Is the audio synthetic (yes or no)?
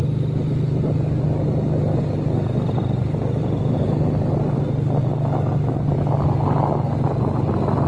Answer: no